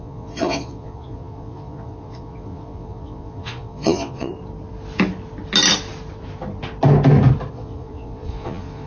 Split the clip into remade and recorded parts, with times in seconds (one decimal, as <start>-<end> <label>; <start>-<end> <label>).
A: 0.0-4.3 remade; 4.3-7.5 recorded; 7.5-8.9 remade

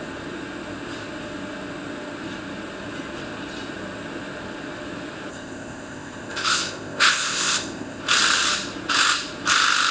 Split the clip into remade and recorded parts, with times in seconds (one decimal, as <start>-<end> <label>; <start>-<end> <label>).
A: 0.0-5.3 recorded; 5.3-8.0 remade; 8.0-9.9 recorded